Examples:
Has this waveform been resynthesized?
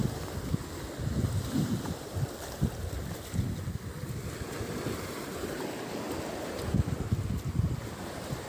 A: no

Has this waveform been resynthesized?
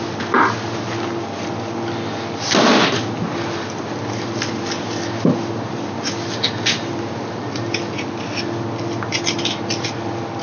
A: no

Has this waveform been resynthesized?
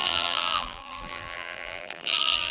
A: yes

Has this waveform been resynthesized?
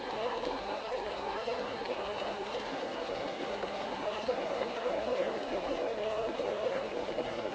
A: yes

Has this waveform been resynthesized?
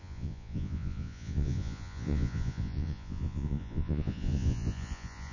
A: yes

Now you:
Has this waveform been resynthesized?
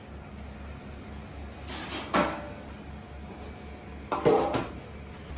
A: no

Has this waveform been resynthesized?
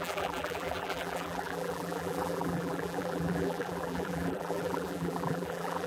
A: yes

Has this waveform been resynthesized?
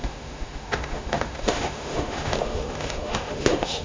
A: yes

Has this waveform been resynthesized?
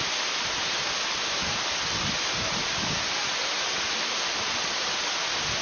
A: no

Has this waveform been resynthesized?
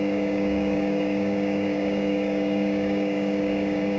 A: yes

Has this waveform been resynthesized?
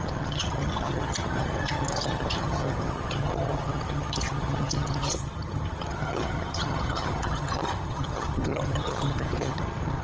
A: yes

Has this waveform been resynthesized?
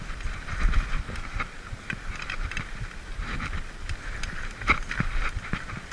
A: no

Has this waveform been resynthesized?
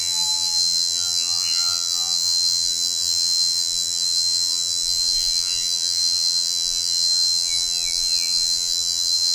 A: yes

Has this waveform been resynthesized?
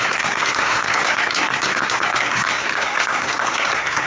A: yes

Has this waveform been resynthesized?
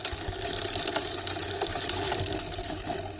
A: no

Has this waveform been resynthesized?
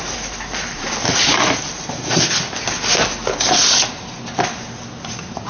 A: no